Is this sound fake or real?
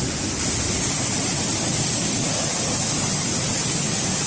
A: real